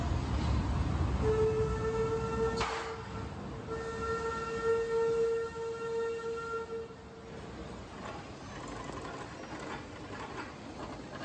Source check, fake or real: real